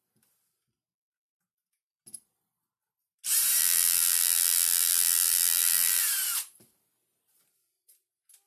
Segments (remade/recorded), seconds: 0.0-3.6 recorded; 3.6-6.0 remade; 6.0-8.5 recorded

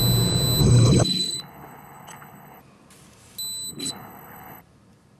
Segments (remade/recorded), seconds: 0.0-0.6 recorded; 0.6-2.6 remade; 2.6-3.7 recorded; 3.7-4.6 remade; 4.6-5.2 recorded

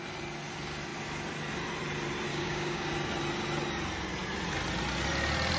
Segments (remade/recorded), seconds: 0.0-2.3 recorded; 2.3-2.9 remade; 2.9-5.6 recorded

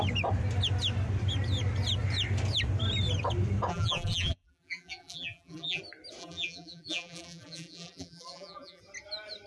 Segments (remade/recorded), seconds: 0.0-3.7 recorded; 3.7-5.8 remade; 5.8-6.2 recorded; 6.2-8.8 remade; 8.8-9.5 recorded